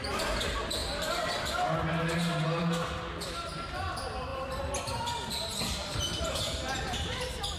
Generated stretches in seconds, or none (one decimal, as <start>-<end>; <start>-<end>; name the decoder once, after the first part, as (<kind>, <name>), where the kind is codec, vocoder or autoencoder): none